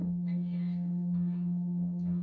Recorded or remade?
remade